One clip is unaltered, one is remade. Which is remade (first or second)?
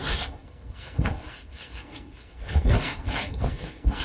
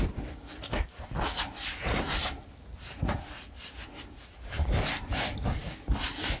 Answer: first